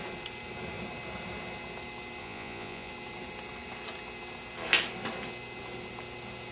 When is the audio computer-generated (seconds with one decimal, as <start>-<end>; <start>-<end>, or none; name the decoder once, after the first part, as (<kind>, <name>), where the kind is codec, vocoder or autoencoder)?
2.2-2.9 (vocoder, Vocos)